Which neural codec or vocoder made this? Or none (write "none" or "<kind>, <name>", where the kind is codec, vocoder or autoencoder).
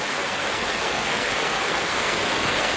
codec, SNAC